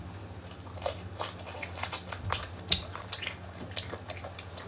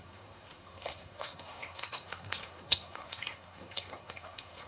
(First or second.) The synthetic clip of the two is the second